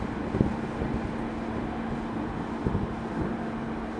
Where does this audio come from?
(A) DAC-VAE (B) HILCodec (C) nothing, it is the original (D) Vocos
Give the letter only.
C